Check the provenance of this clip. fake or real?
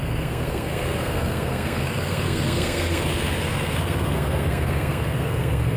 fake